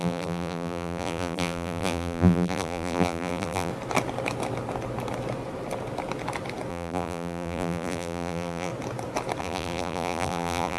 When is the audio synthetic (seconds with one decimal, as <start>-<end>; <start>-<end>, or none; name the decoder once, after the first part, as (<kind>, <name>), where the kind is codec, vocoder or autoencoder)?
0.0-3.7 (vocoder, BigVGAN v2); 6.7-8.7; 9.4-10.8